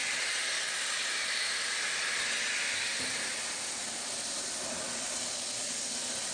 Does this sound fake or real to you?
real